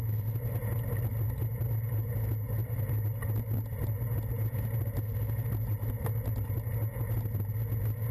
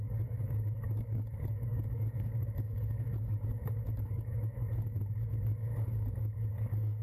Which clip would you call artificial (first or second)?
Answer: second